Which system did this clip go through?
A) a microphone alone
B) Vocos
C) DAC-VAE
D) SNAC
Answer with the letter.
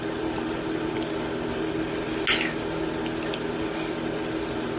A